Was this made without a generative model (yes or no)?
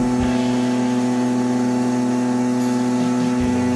yes